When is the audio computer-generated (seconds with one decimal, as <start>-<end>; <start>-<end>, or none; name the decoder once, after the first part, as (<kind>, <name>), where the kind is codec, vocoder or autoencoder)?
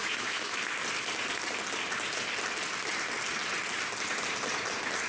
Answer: 0.0-0.6 (autoencoder, DAC-VAE)